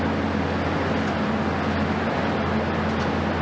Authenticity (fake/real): real